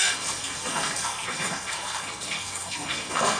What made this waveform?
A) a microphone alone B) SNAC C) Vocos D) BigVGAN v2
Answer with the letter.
B